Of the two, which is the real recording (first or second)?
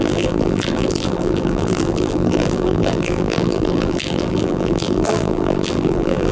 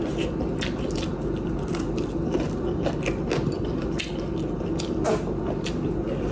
second